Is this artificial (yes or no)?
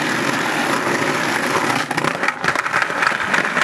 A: no